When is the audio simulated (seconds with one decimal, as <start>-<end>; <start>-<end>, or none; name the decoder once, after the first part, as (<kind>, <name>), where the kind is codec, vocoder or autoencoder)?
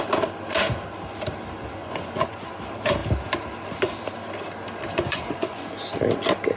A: 1.8-2.5 (vocoder, Vocos); 4.9-5.7